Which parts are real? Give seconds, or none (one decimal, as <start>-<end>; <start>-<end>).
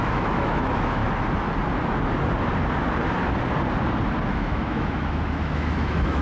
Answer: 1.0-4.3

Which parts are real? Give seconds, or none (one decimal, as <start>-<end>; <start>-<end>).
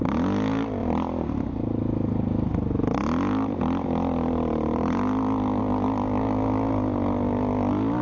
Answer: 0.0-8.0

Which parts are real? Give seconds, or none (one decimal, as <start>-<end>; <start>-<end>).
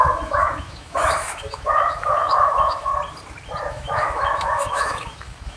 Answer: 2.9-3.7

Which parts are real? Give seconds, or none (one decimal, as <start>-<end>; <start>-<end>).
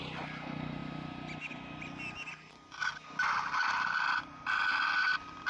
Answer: 0.0-5.5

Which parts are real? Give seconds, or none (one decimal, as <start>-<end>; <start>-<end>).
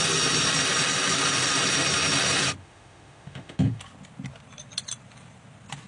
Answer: 0.0-2.6; 3.8-5.9